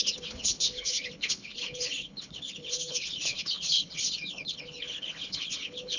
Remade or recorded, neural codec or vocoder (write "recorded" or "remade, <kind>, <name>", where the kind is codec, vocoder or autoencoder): remade, codec, HILCodec